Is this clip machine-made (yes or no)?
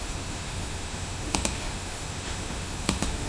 yes